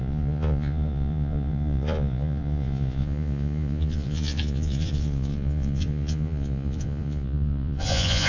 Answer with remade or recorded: remade